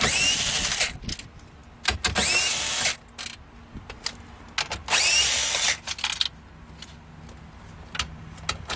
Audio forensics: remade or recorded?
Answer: recorded